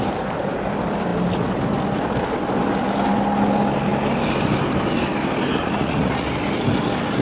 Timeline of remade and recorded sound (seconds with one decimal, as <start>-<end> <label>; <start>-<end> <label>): 0.0-5.5 recorded; 5.5-6.3 remade; 6.3-7.2 recorded